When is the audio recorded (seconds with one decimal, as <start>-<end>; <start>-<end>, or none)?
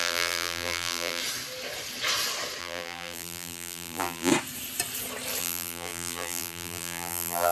1.2-2.6; 4.3-5.4